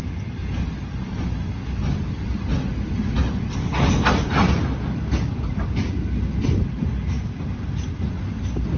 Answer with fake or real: real